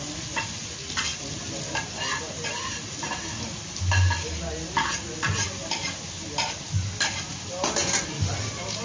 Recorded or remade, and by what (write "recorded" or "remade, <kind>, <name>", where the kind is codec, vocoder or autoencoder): recorded